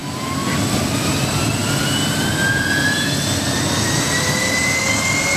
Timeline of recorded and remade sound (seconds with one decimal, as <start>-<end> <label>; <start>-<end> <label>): 0.0-5.4 recorded